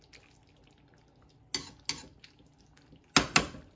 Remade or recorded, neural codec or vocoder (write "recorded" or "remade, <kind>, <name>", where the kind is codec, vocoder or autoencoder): recorded